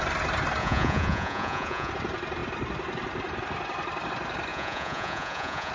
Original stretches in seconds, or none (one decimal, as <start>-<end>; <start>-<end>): 0.0-0.6; 1.9-4.5